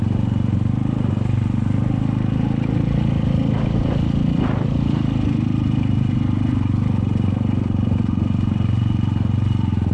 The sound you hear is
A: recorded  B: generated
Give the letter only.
A